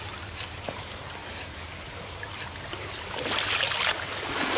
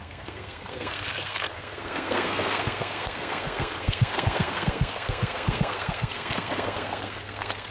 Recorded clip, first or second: first